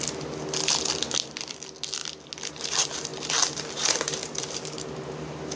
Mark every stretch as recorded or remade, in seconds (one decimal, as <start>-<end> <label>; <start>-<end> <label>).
0.0-3.1 recorded; 3.1-4.4 remade; 4.4-5.6 recorded